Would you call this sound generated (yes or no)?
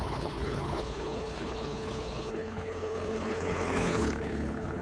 yes